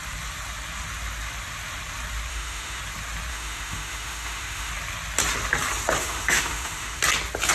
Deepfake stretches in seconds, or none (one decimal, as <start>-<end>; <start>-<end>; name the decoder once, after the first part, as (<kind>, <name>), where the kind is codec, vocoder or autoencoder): 2.3-2.8 (autoencoder, DAC-VAE); 3.3-4.7; 6.0-7.0